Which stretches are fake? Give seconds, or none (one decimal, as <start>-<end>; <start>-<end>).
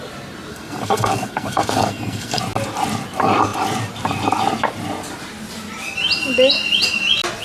0.5-2.4